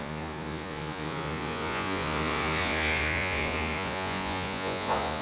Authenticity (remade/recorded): remade